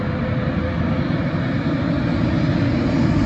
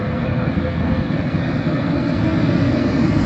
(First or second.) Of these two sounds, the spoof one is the second